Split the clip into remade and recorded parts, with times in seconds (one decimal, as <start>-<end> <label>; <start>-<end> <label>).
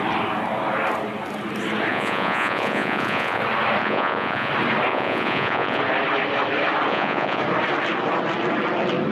0.0-1.9 recorded; 1.9-3.4 remade; 3.4-3.8 recorded; 3.8-4.5 remade; 4.5-4.9 recorded; 4.9-5.8 remade; 5.8-6.9 recorded; 6.9-7.4 remade; 7.4-9.1 recorded